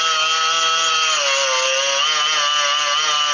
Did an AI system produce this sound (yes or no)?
no